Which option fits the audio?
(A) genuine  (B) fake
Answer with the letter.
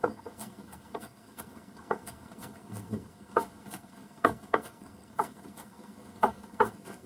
B